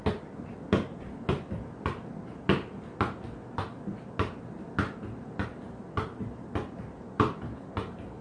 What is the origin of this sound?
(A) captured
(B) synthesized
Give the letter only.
A